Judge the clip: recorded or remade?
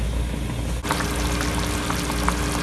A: recorded